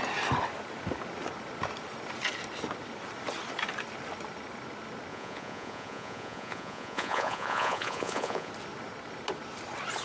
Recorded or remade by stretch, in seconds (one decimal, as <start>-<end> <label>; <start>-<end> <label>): 0.0-5.1 recorded; 5.1-8.5 remade; 8.5-10.0 recorded